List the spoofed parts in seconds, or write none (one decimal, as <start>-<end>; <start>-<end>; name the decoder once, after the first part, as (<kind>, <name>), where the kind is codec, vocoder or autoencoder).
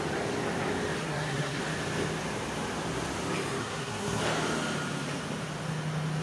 1.0-1.6 (codec, SNAC); 3.6-4.2